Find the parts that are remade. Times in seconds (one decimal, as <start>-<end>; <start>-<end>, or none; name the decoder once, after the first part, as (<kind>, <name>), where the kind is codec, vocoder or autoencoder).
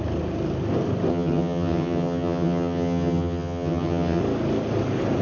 1.1-4.2 (vocoder, HiFi-GAN)